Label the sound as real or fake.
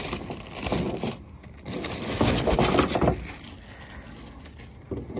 real